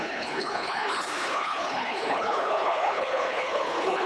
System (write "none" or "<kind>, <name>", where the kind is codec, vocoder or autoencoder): codec, HILCodec